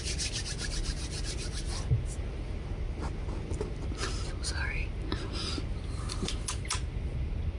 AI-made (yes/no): no